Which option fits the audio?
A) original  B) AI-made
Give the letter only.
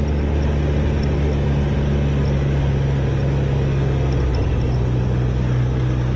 A